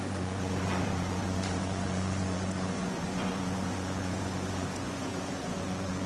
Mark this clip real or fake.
fake